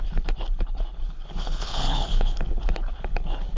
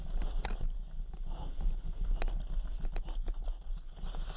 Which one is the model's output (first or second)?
first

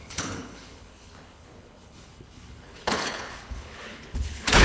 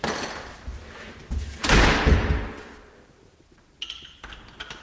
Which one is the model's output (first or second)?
first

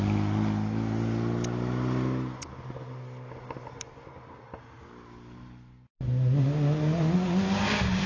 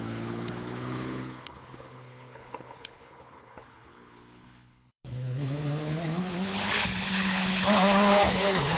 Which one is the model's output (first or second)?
second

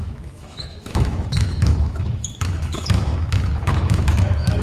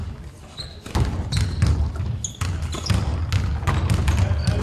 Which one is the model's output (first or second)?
first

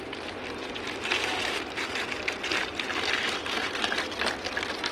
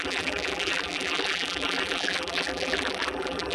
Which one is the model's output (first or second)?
second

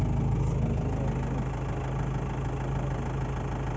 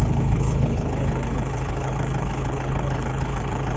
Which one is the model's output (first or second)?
second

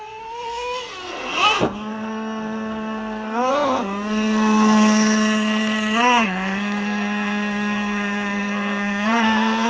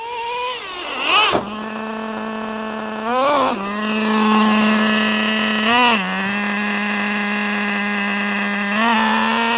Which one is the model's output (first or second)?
first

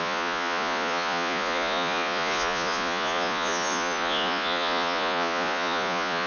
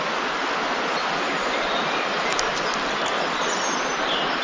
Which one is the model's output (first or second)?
first